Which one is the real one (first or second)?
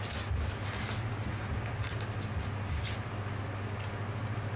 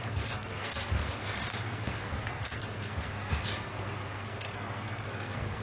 first